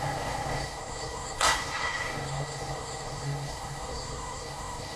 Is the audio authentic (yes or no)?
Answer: no